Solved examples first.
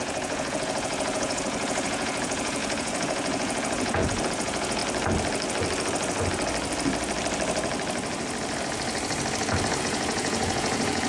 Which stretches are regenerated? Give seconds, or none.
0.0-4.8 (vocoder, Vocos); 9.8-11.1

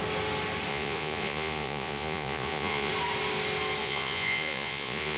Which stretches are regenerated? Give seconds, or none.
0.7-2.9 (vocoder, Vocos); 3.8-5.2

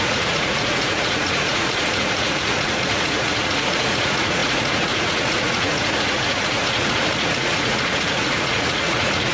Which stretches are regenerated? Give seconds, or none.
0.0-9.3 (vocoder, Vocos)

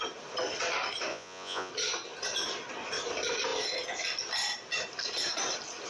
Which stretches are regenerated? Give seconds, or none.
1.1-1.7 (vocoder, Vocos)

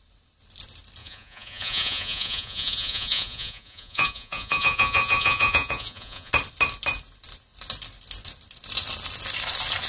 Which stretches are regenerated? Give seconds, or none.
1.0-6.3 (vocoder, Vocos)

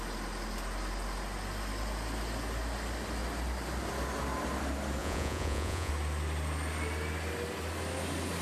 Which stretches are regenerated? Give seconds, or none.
5.0-5.9 (vocoder, Vocos)

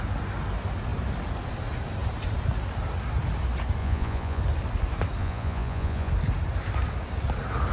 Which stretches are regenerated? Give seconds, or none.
3.8-4.4 (vocoder, Vocos); 5.2-6.1

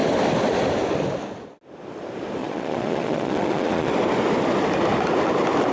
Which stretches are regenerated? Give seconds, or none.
2.4-3.9 (vocoder, Vocos)